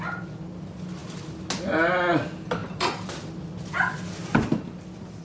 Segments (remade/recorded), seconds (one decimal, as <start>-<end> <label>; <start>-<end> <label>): 0.0-5.2 recorded